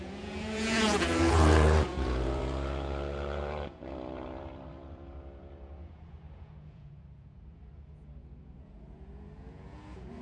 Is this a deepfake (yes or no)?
yes